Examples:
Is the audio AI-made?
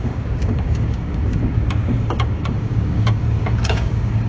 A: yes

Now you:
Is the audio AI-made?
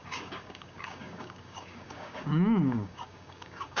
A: yes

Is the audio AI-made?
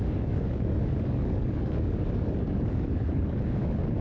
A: yes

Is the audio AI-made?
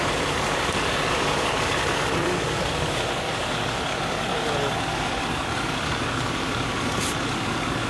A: yes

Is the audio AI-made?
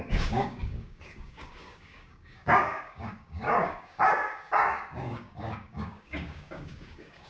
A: yes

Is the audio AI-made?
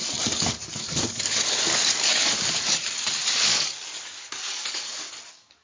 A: yes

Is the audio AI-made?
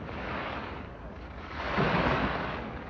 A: yes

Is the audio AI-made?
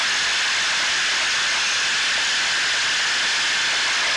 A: no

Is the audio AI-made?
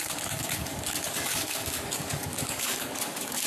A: yes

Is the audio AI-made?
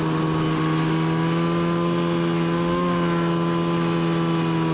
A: no